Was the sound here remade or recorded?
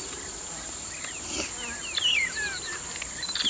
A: recorded